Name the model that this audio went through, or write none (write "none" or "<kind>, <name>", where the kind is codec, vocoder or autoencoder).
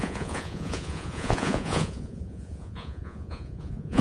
vocoder, Vocos